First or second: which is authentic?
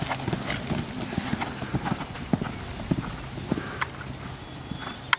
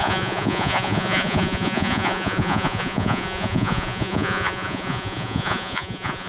first